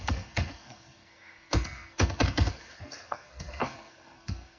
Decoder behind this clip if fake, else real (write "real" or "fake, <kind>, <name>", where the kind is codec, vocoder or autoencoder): fake, codec, SNAC